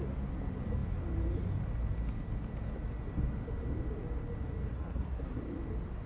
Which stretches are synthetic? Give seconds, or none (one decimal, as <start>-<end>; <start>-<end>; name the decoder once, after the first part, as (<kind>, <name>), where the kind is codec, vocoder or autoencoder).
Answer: 4.7-5.4 (codec, SNAC)